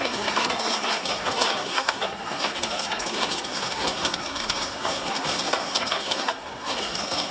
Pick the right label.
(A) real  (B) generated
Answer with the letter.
B